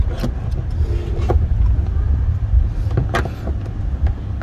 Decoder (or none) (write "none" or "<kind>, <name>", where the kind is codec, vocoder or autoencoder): none